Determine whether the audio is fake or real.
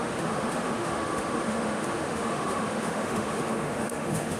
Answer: fake